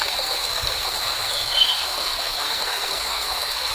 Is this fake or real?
fake